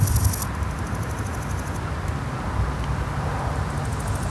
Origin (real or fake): real